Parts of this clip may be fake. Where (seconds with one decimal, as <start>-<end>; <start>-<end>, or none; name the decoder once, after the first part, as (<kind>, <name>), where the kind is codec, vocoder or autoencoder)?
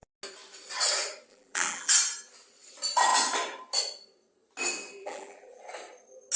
1.3-1.9 (vocoder, BigVGAN v2); 5.0-5.6